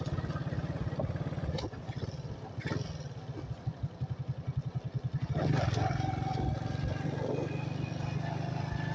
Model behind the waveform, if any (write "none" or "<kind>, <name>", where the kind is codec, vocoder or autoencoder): none